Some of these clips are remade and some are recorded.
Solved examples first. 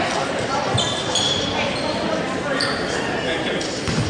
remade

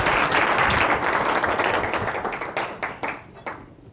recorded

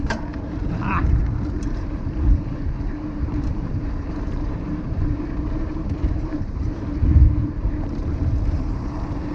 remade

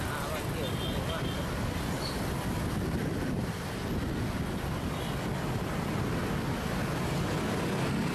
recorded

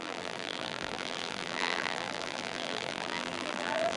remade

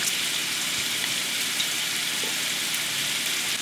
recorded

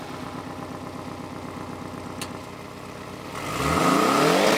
recorded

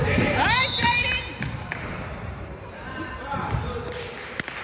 remade